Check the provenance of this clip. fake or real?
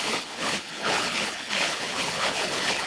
fake